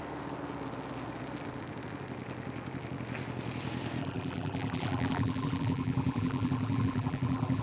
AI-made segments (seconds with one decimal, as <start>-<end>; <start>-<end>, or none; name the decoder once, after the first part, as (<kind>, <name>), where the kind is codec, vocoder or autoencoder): 4.0-7.6 (vocoder, BigVGAN v2)